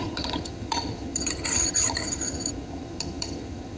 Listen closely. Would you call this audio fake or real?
fake